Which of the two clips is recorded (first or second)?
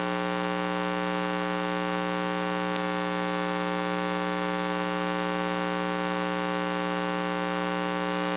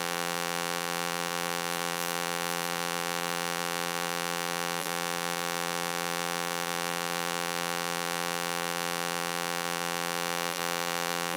first